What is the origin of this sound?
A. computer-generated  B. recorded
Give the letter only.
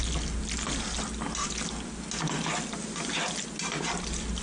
B